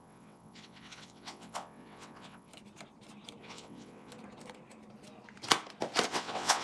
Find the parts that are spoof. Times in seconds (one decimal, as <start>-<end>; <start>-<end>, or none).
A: 0.0-2.5; 3.4-4.1; 6.1-6.6